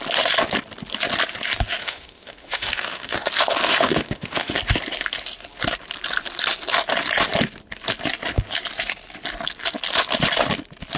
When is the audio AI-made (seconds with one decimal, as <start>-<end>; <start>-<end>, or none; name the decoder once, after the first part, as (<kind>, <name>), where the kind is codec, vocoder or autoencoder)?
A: 1.8-3.3 (autoencoder, DAC-VAE); 3.7-4.6